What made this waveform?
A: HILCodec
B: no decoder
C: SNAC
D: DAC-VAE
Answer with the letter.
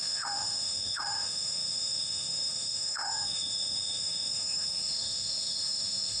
D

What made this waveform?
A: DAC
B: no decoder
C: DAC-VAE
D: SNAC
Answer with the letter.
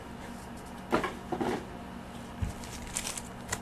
B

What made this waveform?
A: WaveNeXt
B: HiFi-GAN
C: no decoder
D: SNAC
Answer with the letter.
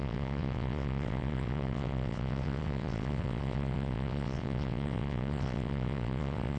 A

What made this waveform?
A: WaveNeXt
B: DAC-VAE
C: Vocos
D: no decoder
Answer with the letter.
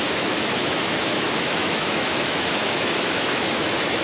B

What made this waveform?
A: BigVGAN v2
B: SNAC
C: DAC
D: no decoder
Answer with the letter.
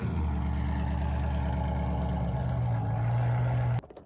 D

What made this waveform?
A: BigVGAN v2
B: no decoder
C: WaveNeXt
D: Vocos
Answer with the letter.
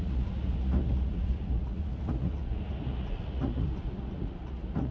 D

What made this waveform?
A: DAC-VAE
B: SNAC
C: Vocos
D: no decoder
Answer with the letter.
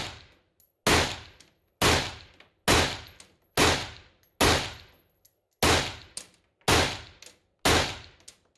D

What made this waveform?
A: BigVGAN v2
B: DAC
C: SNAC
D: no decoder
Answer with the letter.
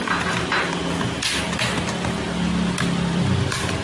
D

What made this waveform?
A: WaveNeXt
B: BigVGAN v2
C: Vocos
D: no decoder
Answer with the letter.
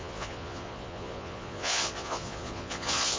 C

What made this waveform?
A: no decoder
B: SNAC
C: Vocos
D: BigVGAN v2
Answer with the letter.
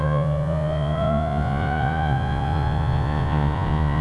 C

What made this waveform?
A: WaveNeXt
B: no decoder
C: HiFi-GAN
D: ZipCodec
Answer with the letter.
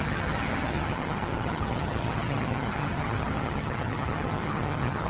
C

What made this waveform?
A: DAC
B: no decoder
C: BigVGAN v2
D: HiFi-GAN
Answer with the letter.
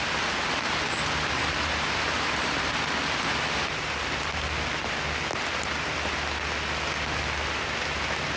B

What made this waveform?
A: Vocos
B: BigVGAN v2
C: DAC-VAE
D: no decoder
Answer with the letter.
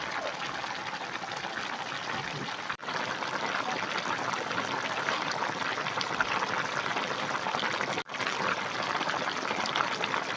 D